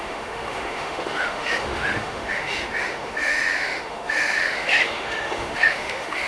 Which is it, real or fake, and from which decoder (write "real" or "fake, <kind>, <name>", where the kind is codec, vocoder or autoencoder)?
fake, autoencoder, DAC-VAE